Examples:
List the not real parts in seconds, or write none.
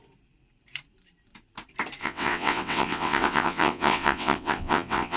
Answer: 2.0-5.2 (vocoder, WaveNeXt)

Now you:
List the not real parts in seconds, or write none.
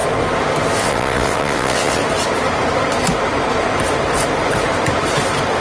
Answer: 0.8-2.0 (vocoder, WaveNeXt)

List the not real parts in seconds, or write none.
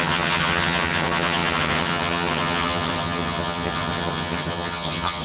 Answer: 0.0-5.2 (vocoder, HiFi-GAN)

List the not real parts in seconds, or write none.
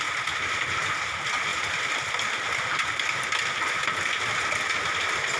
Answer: none